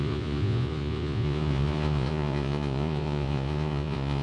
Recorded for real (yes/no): no